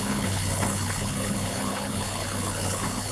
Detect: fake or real fake